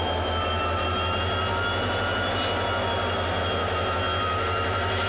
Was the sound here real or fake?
real